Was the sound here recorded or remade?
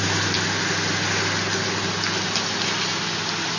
recorded